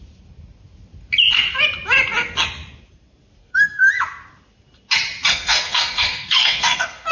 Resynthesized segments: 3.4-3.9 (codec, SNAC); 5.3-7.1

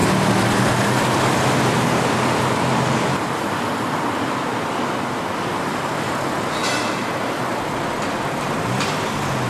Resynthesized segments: none